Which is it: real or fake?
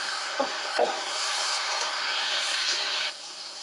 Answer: fake